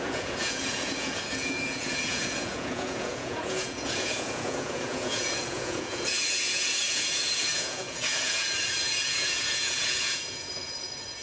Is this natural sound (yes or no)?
no